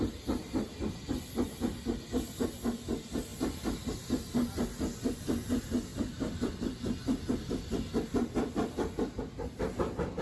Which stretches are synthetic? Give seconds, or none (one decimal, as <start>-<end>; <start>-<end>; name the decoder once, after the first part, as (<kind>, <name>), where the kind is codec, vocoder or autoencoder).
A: none